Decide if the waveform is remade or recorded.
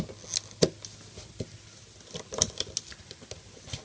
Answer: recorded